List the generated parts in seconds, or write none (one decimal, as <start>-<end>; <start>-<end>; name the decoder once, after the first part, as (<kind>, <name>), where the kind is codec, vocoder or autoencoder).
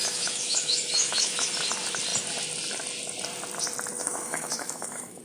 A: 0.0-1.5 (autoencoder, DAC-VAE); 4.0-5.2